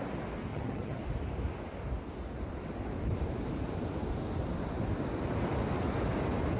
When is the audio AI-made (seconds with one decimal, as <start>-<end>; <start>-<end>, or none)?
0.5-1.0

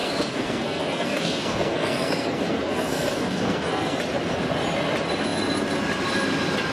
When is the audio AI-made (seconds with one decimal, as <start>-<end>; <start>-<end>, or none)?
0.0-4.0

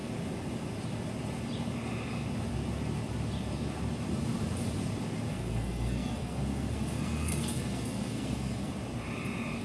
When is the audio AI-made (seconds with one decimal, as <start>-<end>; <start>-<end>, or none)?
5.3-8.7

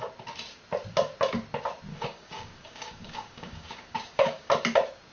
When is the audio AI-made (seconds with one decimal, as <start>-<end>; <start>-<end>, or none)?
1.9-4.5

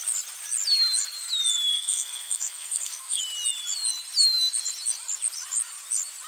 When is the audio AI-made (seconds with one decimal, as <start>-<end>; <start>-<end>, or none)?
1.7-3.2

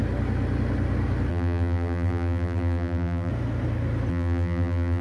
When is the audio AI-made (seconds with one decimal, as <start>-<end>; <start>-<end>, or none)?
1.3-3.3; 4.1-5.0